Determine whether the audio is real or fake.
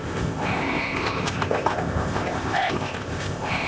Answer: fake